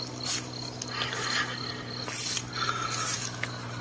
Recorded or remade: recorded